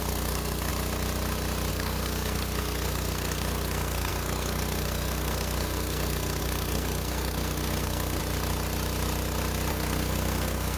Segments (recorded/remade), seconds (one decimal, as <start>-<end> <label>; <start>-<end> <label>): 0.0-0.7 remade; 0.7-1.7 recorded; 1.7-8.2 remade; 8.2-9.7 recorded; 9.7-10.8 remade